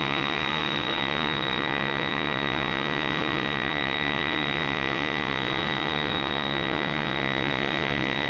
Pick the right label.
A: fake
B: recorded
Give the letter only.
A